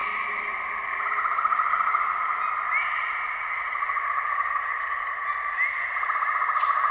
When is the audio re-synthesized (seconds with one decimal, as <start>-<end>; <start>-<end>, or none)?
none